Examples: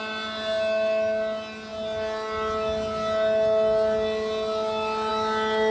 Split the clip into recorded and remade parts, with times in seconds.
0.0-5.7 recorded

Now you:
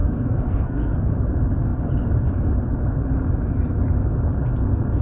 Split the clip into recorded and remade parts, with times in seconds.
0.0-1.1 remade; 1.1-5.0 recorded

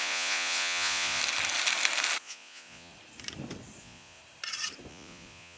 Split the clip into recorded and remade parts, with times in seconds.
0.0-1.2 remade; 1.2-2.2 recorded; 2.2-2.9 remade; 2.9-3.8 recorded; 3.8-4.2 remade; 4.2-4.9 recorded; 4.9-5.6 remade

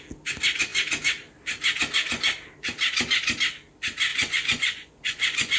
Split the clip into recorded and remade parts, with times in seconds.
0.0-4.1 recorded; 4.1-5.6 remade

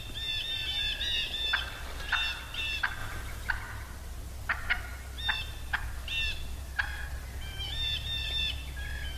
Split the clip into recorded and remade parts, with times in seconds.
0.0-9.2 recorded

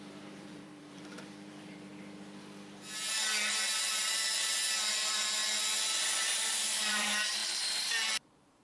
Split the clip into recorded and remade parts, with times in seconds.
0.0-1.9 remade; 1.9-4.9 recorded; 4.9-5.4 remade; 5.4-6.5 recorded; 6.5-8.6 remade